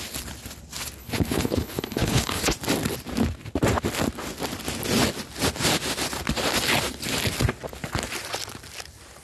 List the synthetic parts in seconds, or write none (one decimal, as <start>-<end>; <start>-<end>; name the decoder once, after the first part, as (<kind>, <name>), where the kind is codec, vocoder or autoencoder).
1.0-2.4 (codec, HILCodec)